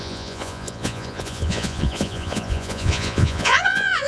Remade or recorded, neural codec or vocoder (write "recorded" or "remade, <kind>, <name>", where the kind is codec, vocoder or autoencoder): remade, vocoder, Vocos